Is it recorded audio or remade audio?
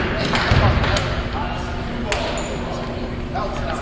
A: recorded